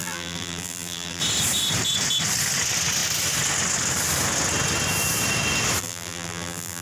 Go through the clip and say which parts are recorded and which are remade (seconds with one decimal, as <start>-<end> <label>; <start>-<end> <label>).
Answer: 0.0-1.2 remade; 1.2-5.8 recorded; 5.8-6.8 remade